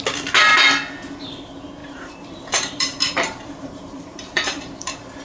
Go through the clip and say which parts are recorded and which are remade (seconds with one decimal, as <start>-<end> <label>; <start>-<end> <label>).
0.0-1.8 recorded; 1.8-5.2 remade